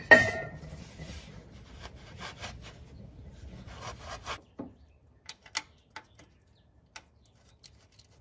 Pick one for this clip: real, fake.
real